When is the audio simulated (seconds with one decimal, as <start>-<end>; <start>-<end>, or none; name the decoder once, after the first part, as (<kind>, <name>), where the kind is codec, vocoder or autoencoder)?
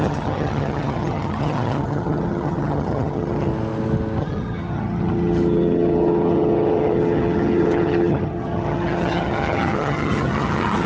0.0-3.5 (vocoder, HiFi-GAN); 4.2-10.9